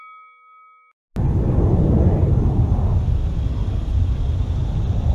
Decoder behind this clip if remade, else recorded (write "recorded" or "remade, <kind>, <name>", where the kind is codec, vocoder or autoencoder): recorded